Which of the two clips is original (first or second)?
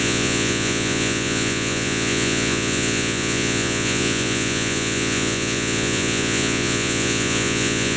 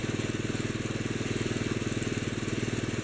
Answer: second